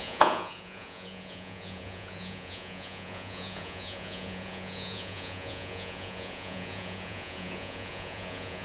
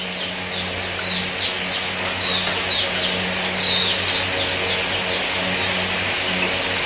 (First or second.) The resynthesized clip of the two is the first